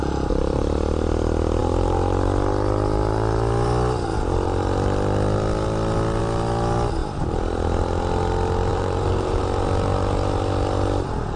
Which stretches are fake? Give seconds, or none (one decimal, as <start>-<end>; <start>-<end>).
8.7-9.4